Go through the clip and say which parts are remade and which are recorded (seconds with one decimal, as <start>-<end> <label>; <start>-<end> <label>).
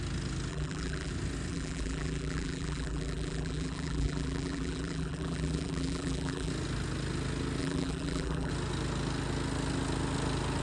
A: 0.0-0.5 recorded; 0.5-1.1 remade; 1.1-1.5 recorded; 1.5-6.5 remade; 6.5-7.6 recorded; 7.6-8.5 remade; 8.5-10.6 recorded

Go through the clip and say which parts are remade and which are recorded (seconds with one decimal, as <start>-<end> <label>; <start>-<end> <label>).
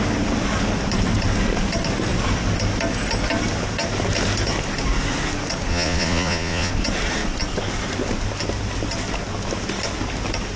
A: 0.0-5.7 recorded; 5.7-6.7 remade; 6.7-10.6 recorded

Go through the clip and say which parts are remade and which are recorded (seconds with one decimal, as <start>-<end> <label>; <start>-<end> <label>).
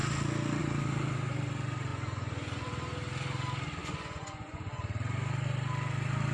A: 0.0-1.9 recorded; 1.9-2.7 remade; 2.7-3.8 recorded; 3.8-4.8 remade; 4.8-6.3 recorded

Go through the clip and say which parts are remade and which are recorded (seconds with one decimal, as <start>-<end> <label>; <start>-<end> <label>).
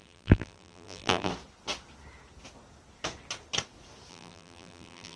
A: 0.0-1.3 remade; 1.3-4.1 recorded; 4.1-5.2 remade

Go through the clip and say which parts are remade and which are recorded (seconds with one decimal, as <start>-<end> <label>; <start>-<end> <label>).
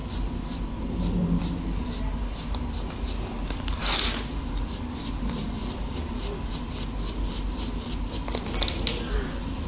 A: 0.0-9.7 recorded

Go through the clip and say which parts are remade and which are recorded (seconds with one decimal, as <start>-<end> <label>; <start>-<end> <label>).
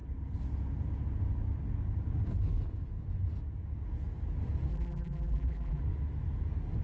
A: 0.0-4.7 recorded; 4.7-5.8 remade; 5.8-6.8 recorded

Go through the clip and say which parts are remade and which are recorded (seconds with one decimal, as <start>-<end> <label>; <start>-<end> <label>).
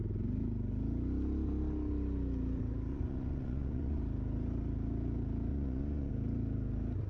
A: 0.0-2.9 recorded; 2.9-4.0 remade; 4.0-5.5 recorded; 5.5-6.1 remade; 6.1-7.1 recorded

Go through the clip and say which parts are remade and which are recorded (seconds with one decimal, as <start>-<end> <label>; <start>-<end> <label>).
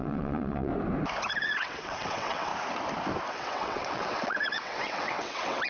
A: 0.0-0.7 remade; 0.7-1.3 recorded; 1.3-2.5 remade; 2.5-3.3 recorded; 3.3-5.7 remade